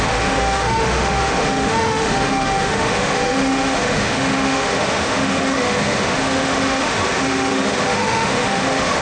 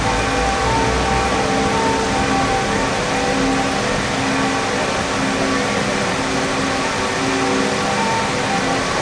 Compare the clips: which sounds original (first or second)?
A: second